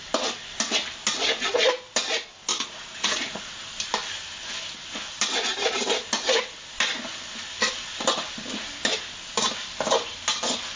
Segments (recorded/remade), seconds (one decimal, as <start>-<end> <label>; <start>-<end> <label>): 0.0-2.5 recorded; 2.5-3.4 remade; 3.4-10.8 recorded